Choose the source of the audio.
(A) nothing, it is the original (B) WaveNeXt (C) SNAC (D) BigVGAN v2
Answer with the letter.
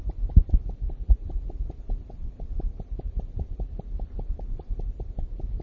D